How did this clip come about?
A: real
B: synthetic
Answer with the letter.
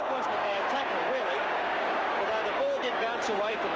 B